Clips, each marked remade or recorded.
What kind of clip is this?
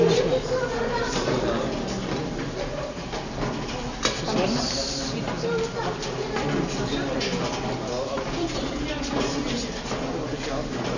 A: recorded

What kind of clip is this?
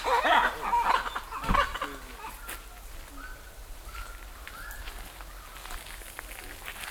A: recorded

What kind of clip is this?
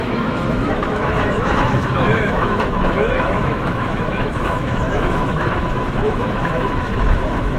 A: remade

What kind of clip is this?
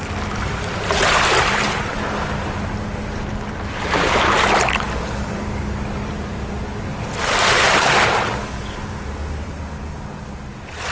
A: recorded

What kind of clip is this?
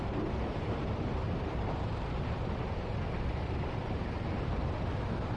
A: remade